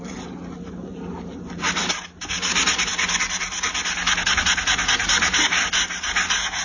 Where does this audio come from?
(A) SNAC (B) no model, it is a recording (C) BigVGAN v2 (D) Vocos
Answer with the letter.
B